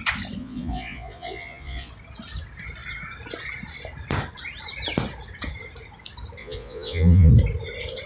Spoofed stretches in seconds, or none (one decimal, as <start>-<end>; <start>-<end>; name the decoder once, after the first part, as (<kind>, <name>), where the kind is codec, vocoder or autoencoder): 0.4-1.9 (vocoder, Vocos); 6.4-7.3